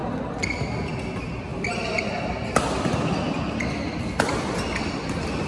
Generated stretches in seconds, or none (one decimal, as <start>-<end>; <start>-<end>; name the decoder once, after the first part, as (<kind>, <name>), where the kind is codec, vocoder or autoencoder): 0.0-0.6 (vocoder, BigVGAN v2); 1.5-4.8